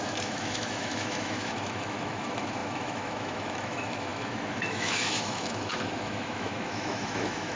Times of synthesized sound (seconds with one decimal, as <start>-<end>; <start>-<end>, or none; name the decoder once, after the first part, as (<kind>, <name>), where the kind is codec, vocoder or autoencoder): 0.0-7.6 (autoencoder, DAC-VAE)